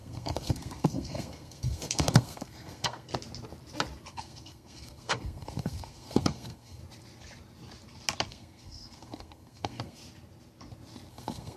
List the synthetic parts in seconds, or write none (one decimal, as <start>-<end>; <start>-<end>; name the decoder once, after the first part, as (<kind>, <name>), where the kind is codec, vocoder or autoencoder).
0.0-3.1 (codec, SNAC); 4.1-6.8; 8.3-10.0; 11.1-11.6